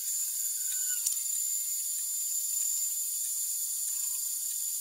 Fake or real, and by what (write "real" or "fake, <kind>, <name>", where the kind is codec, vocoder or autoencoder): real